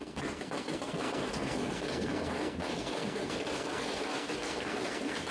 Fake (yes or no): yes